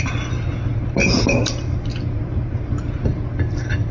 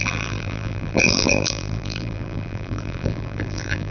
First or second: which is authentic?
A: first